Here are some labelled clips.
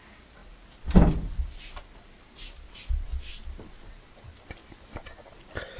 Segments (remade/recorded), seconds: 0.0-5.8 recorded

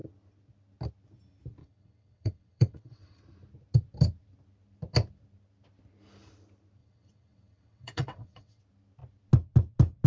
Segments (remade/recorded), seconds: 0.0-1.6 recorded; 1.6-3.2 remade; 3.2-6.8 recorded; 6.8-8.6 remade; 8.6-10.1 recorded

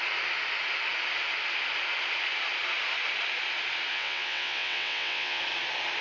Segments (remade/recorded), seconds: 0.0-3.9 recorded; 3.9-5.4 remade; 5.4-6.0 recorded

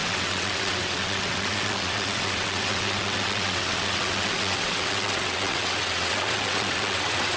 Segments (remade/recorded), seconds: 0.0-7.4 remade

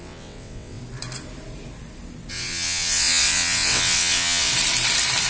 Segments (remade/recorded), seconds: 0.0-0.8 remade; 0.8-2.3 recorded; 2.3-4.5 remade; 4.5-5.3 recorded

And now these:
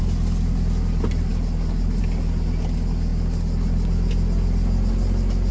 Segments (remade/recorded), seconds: 0.0-5.5 recorded

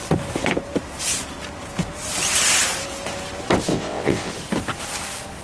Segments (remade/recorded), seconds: 0.0-3.7 recorded; 3.7-4.3 remade; 4.3-5.4 recorded

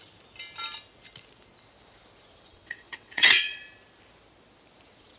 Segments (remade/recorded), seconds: 0.0-2.5 recorded; 2.5-3.6 remade; 3.6-5.2 recorded